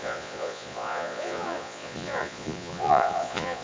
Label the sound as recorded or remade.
remade